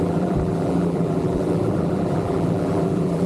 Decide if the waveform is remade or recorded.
remade